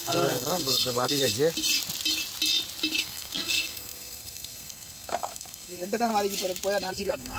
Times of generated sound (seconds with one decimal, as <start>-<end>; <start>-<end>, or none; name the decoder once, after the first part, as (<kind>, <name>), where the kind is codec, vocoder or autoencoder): 0.0-1.3 (codec, SNAC); 3.0-6.1; 6.9-7.4

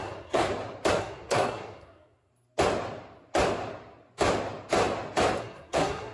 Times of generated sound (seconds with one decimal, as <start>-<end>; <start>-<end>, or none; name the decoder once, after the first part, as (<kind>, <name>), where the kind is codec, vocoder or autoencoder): 0.0-0.5 (codec, SNAC); 1.0-2.3; 5.4-6.1

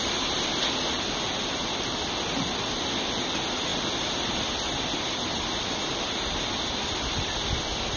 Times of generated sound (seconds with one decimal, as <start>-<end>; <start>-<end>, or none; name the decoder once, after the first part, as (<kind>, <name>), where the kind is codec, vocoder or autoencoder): none

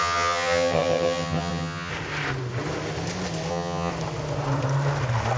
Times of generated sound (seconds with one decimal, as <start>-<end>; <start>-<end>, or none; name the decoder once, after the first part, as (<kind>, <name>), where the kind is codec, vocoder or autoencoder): 0.0-1.9 (vocoder, HiFi-GAN); 3.5-3.9

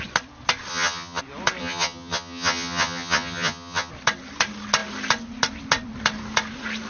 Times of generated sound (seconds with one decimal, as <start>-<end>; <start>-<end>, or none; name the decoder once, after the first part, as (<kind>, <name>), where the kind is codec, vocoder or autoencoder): 0.7-1.2 (vocoder, HiFi-GAN); 1.6-3.9

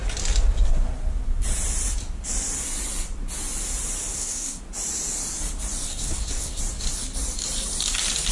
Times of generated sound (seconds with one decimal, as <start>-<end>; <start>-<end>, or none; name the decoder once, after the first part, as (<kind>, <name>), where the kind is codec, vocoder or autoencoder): 4.1-4.6 (codec, SNAC); 5.9-6.6

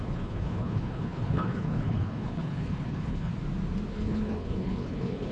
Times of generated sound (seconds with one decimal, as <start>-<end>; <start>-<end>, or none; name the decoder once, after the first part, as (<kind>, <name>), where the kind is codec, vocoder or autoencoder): 0.0-3.3 (codec, HILCodec); 3.9-5.3